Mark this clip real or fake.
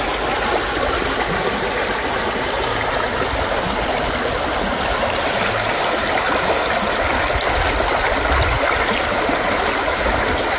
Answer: real